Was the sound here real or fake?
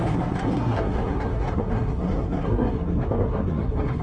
fake